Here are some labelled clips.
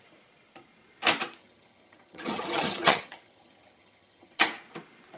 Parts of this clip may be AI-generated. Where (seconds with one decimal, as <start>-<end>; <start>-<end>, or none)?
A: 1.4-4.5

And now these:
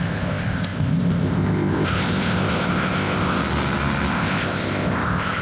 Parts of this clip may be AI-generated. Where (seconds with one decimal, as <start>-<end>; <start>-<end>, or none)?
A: 0.0-3.4; 4.1-5.4

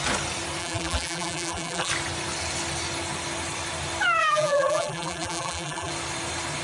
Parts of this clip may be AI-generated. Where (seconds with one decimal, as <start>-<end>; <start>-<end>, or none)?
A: 0.6-1.9; 4.2-5.9